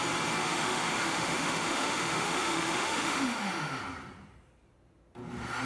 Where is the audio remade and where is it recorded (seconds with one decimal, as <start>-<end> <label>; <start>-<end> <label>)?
0.0-0.4 recorded; 0.4-3.8 remade; 3.8-5.7 recorded